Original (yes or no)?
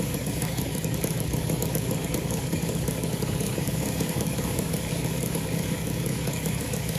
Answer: no